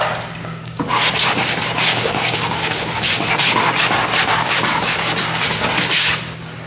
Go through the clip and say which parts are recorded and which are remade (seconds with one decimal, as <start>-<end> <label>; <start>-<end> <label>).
0.0-0.4 recorded; 0.4-0.9 remade; 0.9-1.9 recorded; 1.9-2.9 remade; 2.9-4.2 recorded; 4.2-5.4 remade; 5.4-6.7 recorded